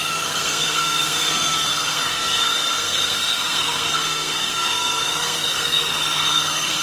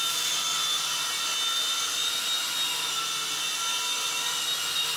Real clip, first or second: second